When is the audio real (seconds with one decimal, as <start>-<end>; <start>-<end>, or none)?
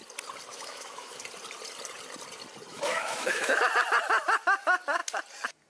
0.0-0.5; 1.2-2.7; 3.6-5.7